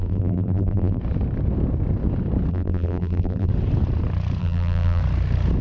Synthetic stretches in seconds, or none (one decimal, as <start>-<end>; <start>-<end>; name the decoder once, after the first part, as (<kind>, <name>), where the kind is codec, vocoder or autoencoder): 0.0-1.0 (vocoder, BigVGAN v2); 2.5-3.5; 4.4-5.0